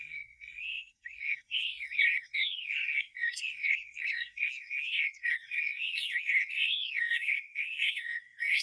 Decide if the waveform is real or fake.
fake